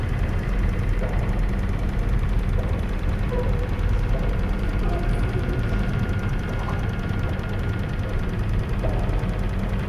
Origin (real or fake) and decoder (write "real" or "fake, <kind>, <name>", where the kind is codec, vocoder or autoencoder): fake, vocoder, BigVGAN v2